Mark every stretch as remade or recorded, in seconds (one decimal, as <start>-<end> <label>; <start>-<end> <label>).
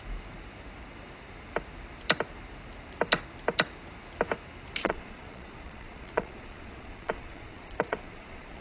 0.0-4.8 recorded; 4.8-8.6 remade